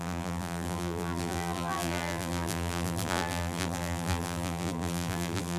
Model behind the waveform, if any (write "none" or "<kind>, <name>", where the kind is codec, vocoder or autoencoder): vocoder, BigVGAN v2